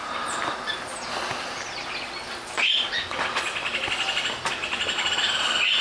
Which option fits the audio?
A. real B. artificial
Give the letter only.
A